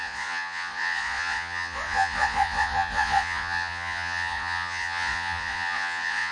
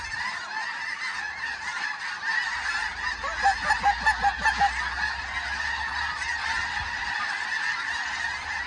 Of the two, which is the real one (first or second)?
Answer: second